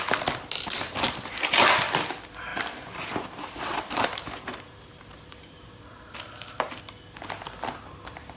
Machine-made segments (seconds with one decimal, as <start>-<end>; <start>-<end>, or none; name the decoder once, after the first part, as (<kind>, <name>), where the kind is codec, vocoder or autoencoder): 2.5-6.8 (vocoder, BigVGAN v2)